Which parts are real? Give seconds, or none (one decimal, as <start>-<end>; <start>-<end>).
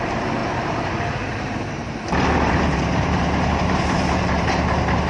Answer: none